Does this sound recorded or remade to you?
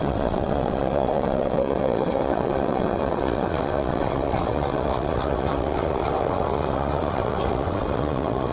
remade